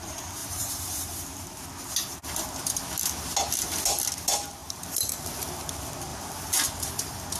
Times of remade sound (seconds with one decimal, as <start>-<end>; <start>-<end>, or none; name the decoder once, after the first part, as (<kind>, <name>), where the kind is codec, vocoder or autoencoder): 0.4-1.7 (vocoder, BigVGAN v2); 6.1-6.9